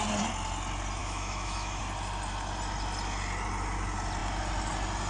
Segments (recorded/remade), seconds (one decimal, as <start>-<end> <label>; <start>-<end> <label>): 0.0-1.0 recorded; 1.0-1.8 remade; 1.8-5.1 recorded